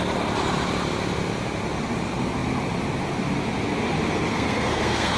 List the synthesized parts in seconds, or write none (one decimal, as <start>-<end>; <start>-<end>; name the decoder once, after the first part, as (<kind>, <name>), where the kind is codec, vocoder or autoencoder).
4.3-5.2 (codec, SNAC)